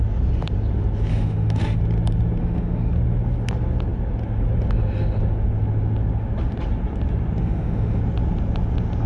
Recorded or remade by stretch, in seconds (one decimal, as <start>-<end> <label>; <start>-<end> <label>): 0.0-1.1 recorded; 1.1-1.8 remade; 1.8-2.4 recorded; 2.4-2.9 remade; 2.9-7.4 recorded; 7.4-8.0 remade; 8.0-9.1 recorded